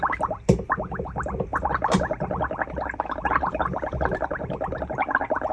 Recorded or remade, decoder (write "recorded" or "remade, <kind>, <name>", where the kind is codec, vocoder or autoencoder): recorded